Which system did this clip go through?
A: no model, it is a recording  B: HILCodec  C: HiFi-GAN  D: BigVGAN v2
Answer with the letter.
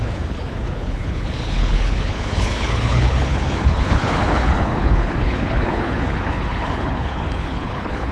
B